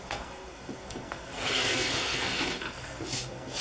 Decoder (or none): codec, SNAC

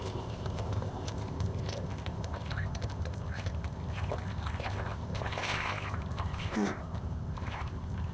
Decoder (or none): codec, ZipCodec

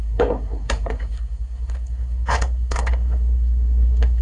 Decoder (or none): codec, SNAC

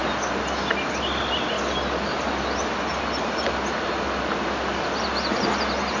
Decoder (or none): none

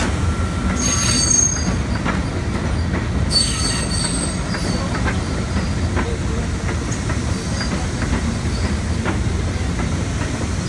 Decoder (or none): none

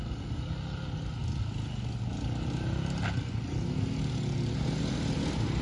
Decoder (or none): none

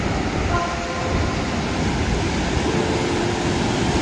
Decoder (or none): none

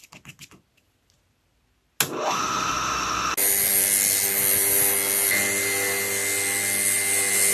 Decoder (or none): none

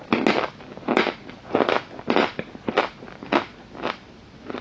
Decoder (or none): none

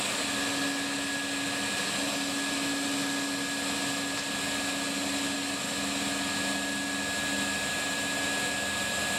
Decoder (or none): none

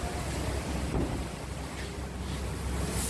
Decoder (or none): none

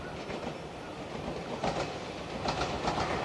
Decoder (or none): none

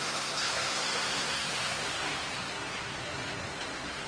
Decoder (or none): codec, SNAC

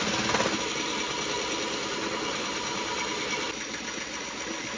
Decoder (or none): none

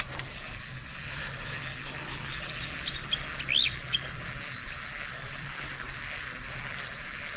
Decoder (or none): vocoder, BigVGAN v2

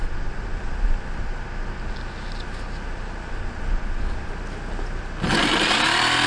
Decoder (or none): none